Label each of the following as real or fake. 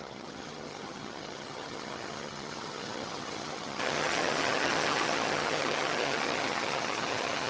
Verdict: fake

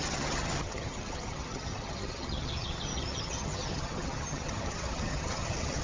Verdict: fake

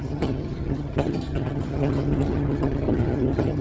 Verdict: fake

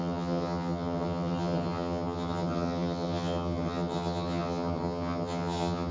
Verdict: fake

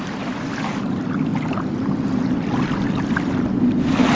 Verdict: real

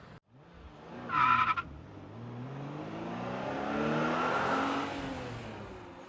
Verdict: real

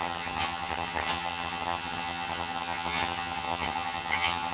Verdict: fake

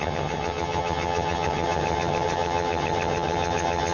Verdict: fake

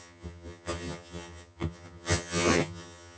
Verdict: fake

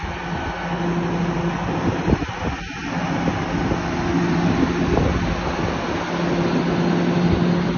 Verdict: real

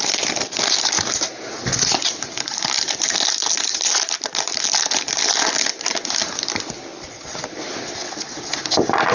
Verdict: real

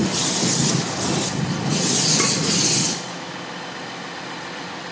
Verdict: real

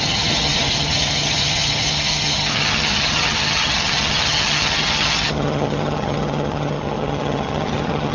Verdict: fake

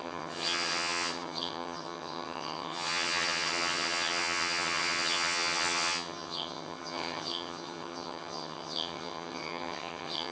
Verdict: fake